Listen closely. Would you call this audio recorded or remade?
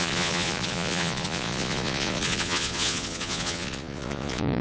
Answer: remade